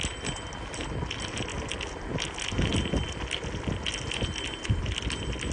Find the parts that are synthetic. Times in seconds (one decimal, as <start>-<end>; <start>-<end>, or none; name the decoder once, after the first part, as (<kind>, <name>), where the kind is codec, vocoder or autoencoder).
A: none